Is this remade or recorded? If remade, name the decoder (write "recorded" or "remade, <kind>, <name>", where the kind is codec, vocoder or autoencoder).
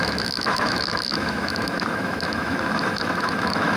remade, autoencoder, DAC-VAE